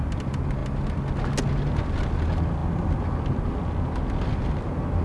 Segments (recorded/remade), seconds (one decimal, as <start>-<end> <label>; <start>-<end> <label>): 0.0-5.0 recorded